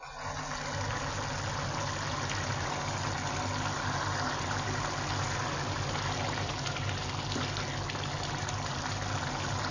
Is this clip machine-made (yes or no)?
no